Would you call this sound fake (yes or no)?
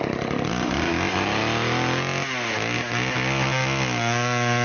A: no